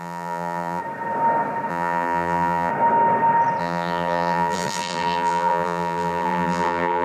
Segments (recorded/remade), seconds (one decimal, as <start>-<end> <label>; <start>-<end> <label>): 0.0-0.8 remade; 0.8-1.7 recorded; 1.7-2.7 remade; 2.7-3.6 recorded; 3.6-7.0 remade